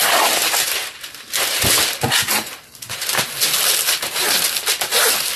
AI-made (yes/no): no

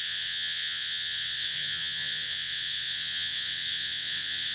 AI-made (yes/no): yes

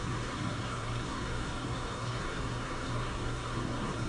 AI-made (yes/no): yes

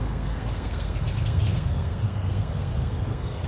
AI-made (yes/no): yes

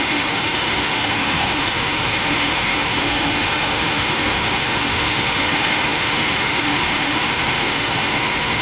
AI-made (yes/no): yes